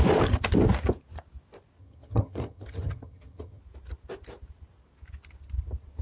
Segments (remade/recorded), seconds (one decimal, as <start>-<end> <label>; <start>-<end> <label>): 0.0-1.8 recorded; 1.8-3.6 remade; 3.6-6.0 recorded